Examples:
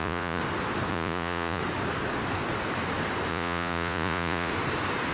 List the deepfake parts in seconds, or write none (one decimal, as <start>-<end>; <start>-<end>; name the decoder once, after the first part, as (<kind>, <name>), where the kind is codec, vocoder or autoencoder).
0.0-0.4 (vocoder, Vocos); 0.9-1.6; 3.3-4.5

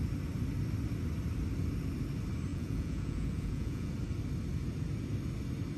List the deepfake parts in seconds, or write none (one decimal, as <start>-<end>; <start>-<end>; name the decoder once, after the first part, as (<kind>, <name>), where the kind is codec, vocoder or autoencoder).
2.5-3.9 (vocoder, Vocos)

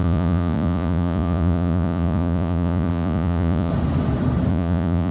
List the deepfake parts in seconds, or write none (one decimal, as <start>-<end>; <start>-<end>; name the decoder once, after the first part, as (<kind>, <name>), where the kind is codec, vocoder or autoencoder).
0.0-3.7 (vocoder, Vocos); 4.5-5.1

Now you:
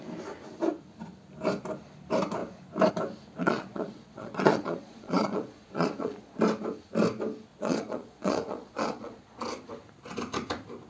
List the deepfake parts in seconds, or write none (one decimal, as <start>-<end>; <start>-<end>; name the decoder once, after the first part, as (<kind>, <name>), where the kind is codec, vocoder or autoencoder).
3.4-6.4 (vocoder, Vocos); 7.5-9.4

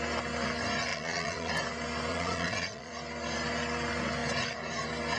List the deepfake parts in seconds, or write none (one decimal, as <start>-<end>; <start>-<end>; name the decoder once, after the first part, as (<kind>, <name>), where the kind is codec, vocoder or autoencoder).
0.9-1.5 (vocoder, Vocos); 2.1-2.9

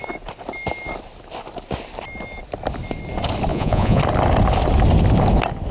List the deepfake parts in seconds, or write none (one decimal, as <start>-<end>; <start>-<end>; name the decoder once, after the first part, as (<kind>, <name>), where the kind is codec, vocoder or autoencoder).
3.5-4.0 (vocoder, Vocos)

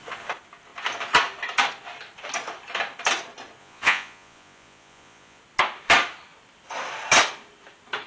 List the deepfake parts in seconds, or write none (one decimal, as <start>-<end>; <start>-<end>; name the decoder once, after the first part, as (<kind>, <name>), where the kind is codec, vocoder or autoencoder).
3.6-5.4 (vocoder, Vocos)